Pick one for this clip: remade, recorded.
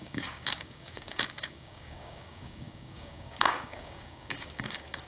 remade